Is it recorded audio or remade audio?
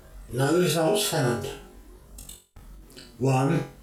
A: recorded